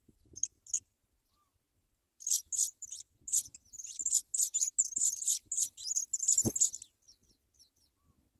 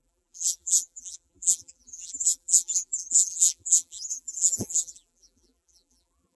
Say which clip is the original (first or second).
first